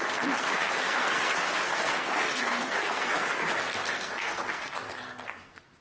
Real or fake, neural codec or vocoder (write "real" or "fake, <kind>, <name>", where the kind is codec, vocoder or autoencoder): fake, codec, SNAC